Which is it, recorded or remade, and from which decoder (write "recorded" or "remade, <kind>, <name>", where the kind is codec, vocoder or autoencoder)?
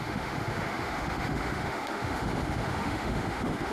remade, autoencoder, DAC-VAE